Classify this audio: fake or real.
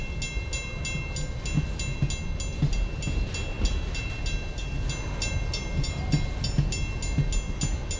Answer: real